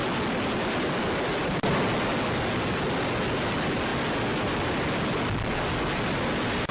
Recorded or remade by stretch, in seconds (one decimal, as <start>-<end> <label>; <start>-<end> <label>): 0.0-6.7 recorded